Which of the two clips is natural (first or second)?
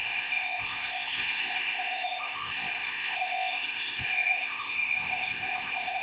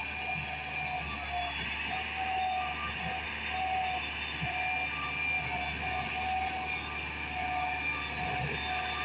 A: second